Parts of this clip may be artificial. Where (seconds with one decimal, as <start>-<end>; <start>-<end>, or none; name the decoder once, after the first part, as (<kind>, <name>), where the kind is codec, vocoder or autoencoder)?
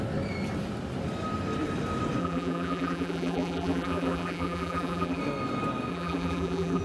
2.2-5.2 (vocoder, BigVGAN v2); 5.9-6.8